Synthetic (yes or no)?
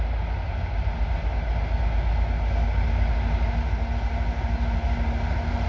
no